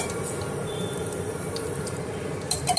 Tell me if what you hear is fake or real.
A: fake